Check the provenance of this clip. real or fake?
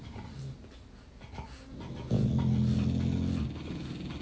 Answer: real